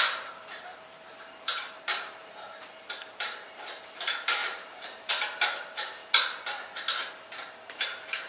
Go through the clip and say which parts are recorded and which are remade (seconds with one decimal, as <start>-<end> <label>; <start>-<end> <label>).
0.0-6.0 remade; 6.0-7.1 recorded; 7.1-8.3 remade